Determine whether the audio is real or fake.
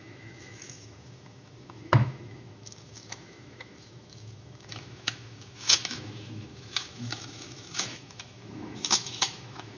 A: fake